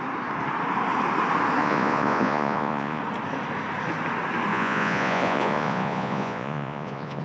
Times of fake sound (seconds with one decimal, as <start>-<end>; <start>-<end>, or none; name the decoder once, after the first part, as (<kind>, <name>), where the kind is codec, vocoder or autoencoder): 1.6-3.0 (vocoder, Vocos); 4.5-7.2